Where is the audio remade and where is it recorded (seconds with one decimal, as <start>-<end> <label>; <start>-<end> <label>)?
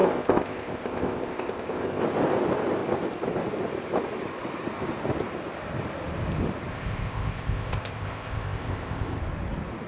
0.0-2.0 remade; 2.0-6.7 recorded; 6.7-9.2 remade; 9.2-9.9 recorded